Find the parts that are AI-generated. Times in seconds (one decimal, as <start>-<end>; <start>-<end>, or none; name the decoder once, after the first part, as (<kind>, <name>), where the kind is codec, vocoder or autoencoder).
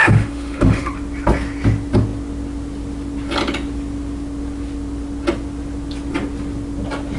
0.0-0.9 (autoencoder, DAC-VAE)